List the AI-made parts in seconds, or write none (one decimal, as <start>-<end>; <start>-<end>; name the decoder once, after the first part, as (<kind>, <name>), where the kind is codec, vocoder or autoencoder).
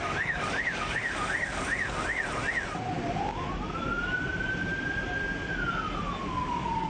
0.0-2.2 (codec, DAC); 6.3-6.9